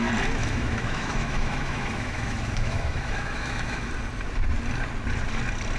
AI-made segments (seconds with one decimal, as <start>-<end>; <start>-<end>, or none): 0.4-3.9